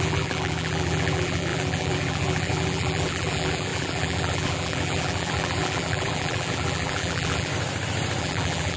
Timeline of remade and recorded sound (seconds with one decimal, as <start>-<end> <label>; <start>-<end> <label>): 0.0-7.5 remade; 7.5-8.2 recorded; 8.2-8.8 remade